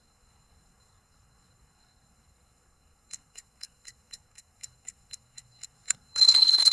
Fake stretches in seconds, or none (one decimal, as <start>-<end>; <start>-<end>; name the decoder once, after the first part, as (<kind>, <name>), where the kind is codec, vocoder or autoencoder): 0.0-6.7 (codec, SNAC)